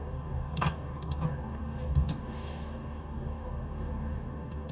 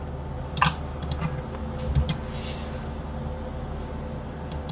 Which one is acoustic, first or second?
second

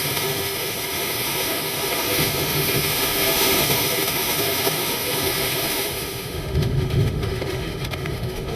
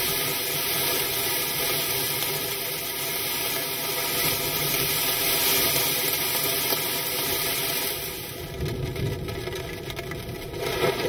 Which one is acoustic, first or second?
second